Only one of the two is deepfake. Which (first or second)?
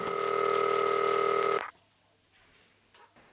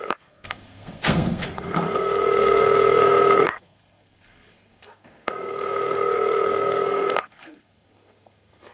second